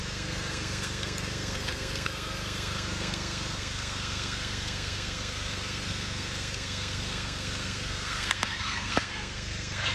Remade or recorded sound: remade